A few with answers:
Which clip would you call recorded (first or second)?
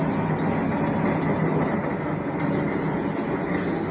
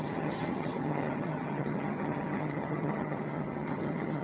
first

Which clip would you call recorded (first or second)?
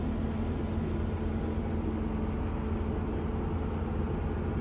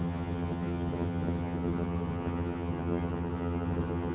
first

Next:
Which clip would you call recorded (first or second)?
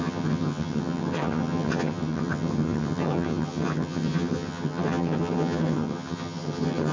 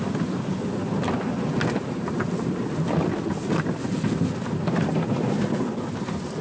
second